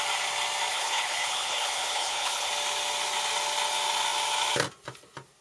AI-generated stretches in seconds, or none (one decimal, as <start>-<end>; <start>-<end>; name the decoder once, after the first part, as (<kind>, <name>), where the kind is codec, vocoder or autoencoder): 0.7-2.5 (codec, HILCodec)